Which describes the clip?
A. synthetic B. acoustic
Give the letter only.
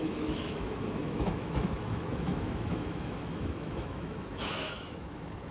A